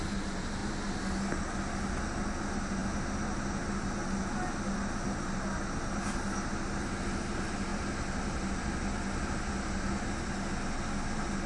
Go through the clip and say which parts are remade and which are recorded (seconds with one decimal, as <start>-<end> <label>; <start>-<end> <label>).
0.0-11.5 recorded